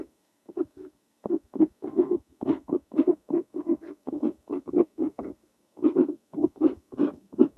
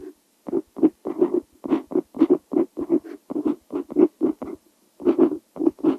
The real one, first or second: second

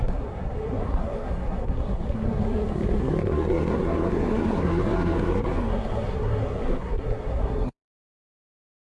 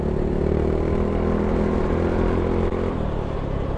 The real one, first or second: second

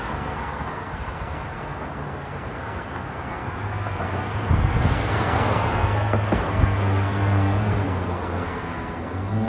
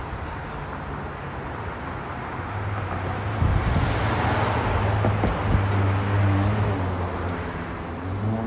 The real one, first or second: second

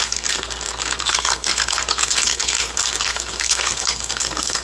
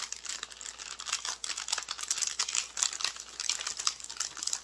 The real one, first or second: second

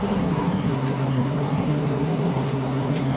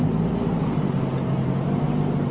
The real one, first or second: second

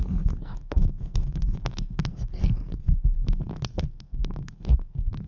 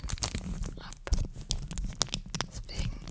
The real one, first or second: second